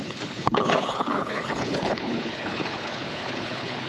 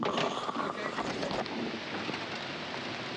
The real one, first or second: second